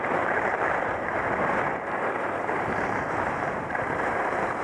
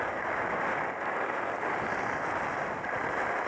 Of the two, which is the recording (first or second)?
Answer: second